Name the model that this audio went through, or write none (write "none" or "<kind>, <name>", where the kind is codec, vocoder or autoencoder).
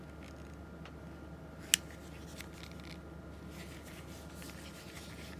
none